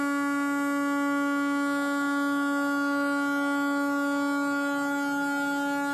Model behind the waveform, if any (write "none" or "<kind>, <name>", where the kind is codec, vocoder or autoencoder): none